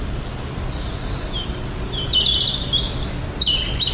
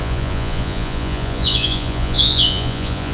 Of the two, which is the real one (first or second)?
first